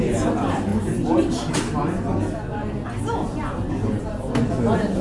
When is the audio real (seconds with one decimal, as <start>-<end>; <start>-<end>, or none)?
0.0-5.0